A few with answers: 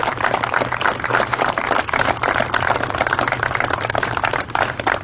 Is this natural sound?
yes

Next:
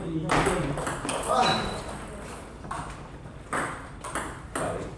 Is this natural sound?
yes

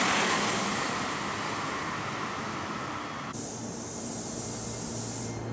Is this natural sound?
yes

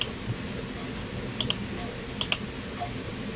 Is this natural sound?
yes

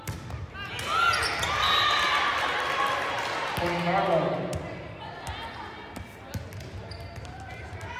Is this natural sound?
yes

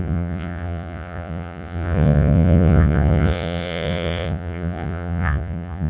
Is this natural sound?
no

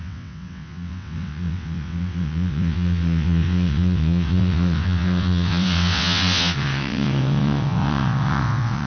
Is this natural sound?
no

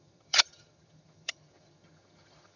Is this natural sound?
no